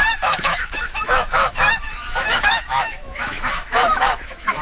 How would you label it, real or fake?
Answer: fake